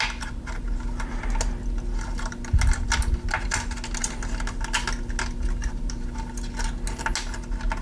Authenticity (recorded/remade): recorded